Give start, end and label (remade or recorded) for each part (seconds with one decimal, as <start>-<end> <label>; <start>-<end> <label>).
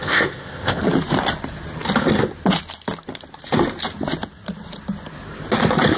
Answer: 0.0-0.8 remade; 0.8-6.0 recorded